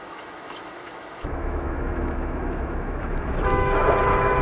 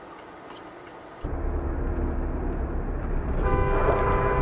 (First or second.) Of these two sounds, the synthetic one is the first